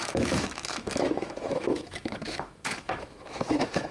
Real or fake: fake